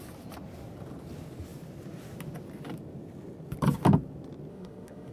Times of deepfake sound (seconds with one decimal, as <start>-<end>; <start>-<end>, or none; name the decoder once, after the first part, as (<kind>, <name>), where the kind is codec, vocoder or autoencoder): 4.5-5.1 (autoencoder, DAC-VAE)